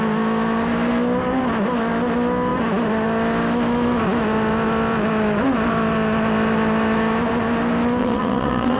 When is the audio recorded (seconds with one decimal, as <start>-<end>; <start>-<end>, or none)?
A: 0.0-8.0